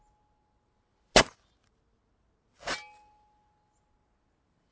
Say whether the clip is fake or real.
real